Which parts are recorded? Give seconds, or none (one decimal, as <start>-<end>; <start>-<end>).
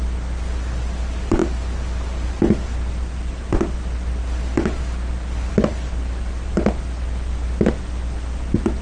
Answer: 0.0-8.8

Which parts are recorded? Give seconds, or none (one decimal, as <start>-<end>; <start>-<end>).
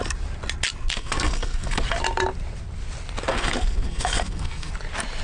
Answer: 0.0-0.9; 1.8-3.3; 4.7-5.2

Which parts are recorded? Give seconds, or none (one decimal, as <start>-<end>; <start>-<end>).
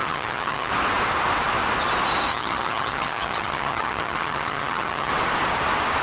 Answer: 0.7-2.3; 5.1-6.0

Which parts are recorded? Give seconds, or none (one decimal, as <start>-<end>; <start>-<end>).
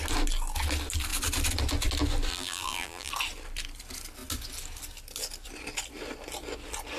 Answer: 0.0-2.3; 3.1-7.0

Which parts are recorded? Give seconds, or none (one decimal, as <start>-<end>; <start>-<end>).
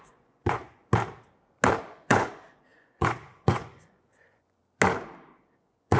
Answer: 0.8-1.8; 4.6-5.6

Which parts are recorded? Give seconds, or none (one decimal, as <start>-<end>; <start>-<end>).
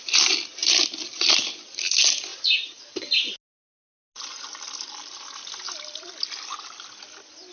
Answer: 0.0-7.5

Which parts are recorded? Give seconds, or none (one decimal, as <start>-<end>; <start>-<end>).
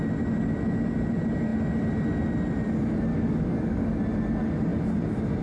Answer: 0.0-3.1; 4.0-5.4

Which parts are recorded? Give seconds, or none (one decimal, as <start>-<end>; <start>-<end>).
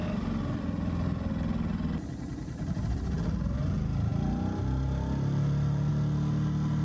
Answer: 0.0-6.8